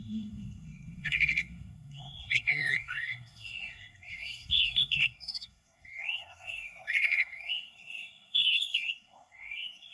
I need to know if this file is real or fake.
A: fake